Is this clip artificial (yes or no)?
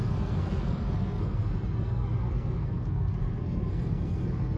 yes